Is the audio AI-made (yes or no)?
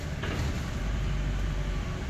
yes